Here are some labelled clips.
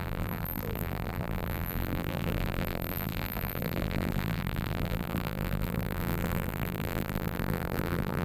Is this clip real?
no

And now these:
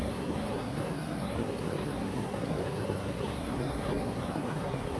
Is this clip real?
no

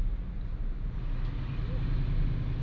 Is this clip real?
yes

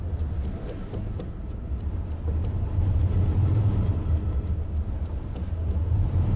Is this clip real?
yes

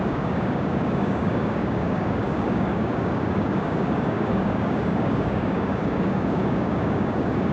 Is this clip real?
no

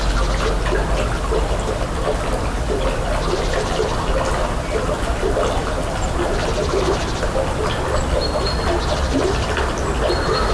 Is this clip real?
yes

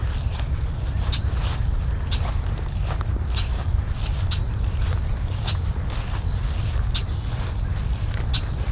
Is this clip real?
yes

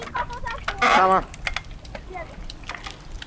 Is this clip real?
yes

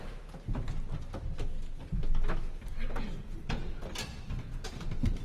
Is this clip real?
yes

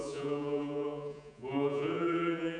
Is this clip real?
no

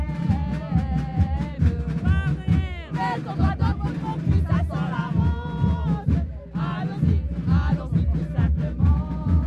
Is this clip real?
yes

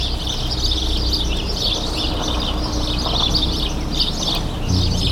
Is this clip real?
yes